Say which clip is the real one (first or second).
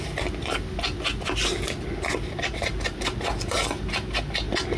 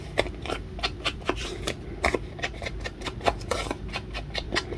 first